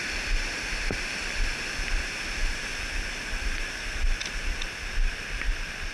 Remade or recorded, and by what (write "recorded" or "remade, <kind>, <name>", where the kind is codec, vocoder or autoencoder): recorded